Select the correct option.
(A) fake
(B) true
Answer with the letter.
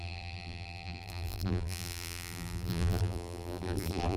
A